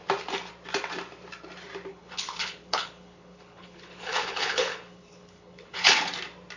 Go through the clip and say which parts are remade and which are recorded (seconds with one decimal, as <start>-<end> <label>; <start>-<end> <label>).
0.0-1.9 recorded; 1.9-5.9 remade; 5.9-6.6 recorded